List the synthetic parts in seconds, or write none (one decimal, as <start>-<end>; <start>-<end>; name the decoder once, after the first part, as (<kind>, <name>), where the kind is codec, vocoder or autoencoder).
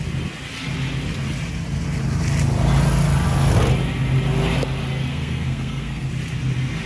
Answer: 5.1-6.1 (codec, SNAC)